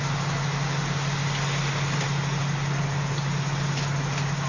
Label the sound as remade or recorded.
recorded